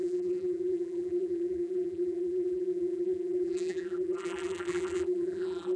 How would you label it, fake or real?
fake